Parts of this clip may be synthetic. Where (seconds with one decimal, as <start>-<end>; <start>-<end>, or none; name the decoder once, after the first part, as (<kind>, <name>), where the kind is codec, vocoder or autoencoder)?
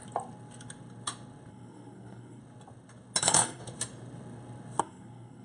1.5-2.4 (codec, SNAC); 3.2-3.6; 4.8-5.4